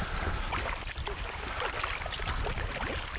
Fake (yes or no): no